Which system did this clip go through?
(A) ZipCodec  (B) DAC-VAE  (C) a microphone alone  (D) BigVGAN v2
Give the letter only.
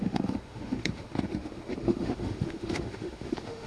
B